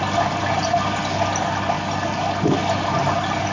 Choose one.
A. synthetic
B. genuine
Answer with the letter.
B